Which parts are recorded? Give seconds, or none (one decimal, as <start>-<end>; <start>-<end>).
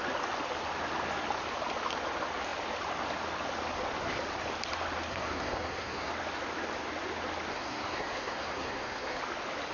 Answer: 0.0-5.1; 6.1-7.5; 9.2-9.7